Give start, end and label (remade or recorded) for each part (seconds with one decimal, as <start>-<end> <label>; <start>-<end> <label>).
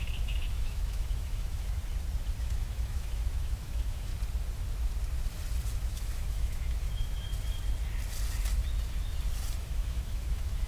0.0-1.8 remade; 1.8-2.4 recorded; 2.4-4.1 remade; 4.1-5.7 recorded; 5.7-7.3 remade; 7.3-9.6 recorded; 9.6-10.7 remade